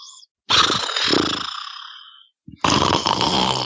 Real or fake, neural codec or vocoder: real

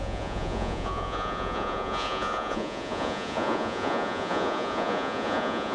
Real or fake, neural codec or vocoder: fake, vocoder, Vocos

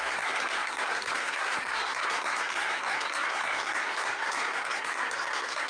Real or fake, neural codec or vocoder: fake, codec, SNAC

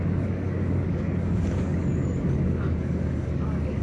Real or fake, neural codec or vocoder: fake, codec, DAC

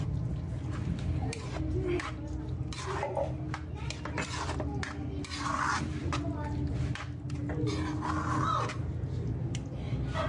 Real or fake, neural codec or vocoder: real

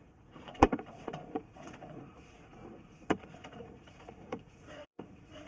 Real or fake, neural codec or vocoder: fake, vocoder, Vocos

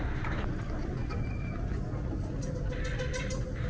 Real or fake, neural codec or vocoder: real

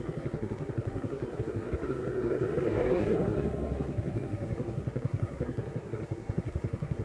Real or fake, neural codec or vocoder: fake, codec, SNAC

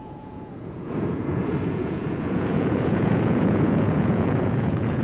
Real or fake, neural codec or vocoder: fake, vocoder, Vocos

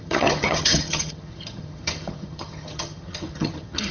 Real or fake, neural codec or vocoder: fake, vocoder, HiFi-GAN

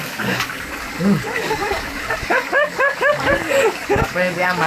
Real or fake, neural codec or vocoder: fake, codec, DAC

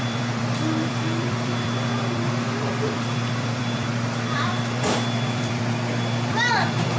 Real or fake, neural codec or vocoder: fake, vocoder, BigVGAN v2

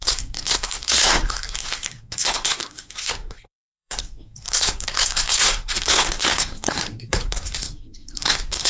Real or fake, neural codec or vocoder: fake, codec, SNAC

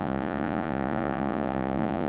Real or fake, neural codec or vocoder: fake, vocoder, Vocos